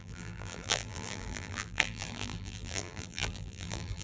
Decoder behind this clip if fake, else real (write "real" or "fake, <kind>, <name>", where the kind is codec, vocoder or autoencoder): fake, vocoder, BigVGAN v2